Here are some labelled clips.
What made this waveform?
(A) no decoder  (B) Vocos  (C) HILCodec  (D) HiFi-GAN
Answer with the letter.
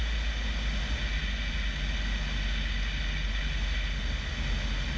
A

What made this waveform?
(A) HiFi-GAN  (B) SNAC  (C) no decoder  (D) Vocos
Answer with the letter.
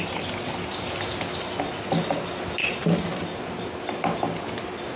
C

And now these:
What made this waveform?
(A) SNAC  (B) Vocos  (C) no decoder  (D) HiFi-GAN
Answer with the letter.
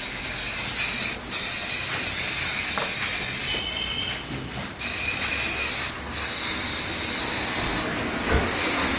C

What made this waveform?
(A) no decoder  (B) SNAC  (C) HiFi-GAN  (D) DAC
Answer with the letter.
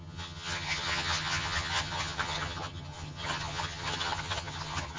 C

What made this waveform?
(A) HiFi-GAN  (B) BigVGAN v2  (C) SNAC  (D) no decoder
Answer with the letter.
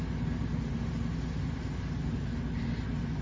D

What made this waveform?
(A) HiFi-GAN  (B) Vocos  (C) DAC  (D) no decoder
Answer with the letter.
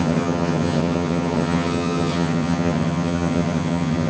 A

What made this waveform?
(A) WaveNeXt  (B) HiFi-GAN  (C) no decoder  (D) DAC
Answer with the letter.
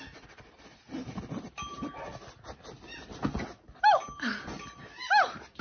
C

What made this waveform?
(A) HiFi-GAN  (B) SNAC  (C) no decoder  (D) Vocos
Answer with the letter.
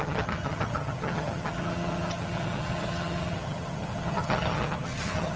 A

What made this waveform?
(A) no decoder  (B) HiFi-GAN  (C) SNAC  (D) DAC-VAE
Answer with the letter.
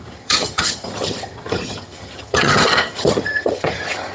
B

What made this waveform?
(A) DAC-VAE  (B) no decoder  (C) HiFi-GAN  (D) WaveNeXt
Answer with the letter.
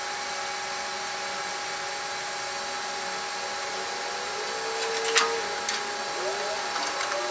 B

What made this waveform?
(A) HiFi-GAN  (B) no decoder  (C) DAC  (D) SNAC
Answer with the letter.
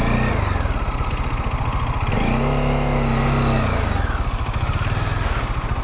B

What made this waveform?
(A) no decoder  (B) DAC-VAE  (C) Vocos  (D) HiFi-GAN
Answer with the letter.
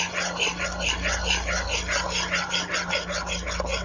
A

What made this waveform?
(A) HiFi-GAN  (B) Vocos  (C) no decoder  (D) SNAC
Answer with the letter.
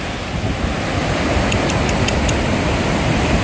C